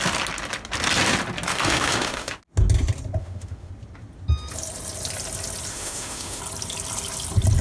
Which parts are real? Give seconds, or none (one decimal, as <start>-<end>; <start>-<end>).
0.0-1.5; 2.4-3.2; 3.7-5.7; 6.4-7.6